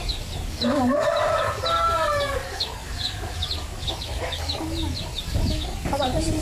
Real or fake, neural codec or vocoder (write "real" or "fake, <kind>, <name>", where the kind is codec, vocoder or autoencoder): fake, codec, DAC